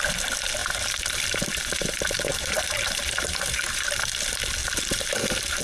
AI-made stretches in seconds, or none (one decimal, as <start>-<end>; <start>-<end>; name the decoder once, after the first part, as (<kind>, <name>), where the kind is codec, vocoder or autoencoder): 0.6-4.0 (vocoder, BigVGAN v2); 4.6-5.6